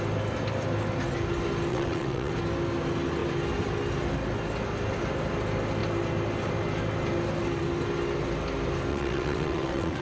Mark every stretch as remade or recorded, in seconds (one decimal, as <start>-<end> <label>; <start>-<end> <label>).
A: 0.0-1.7 recorded; 1.7-2.3 remade; 2.3-8.9 recorded; 8.9-10.0 remade